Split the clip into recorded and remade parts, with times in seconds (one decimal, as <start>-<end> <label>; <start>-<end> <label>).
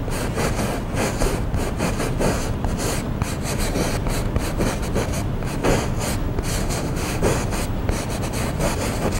0.0-6.6 recorded; 6.6-7.2 remade; 7.2-9.2 recorded